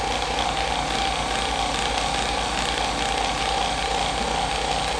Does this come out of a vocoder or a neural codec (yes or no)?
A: no